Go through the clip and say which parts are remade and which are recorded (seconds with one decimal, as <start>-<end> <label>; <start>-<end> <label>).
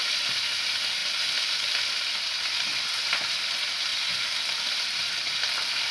0.0-5.9 recorded